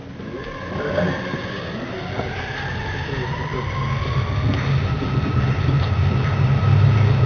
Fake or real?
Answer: real